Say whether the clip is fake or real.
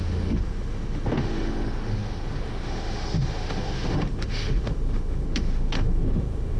fake